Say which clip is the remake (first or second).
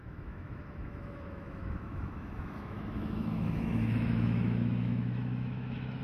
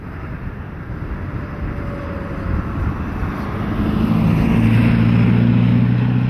first